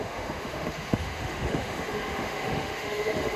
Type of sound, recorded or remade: remade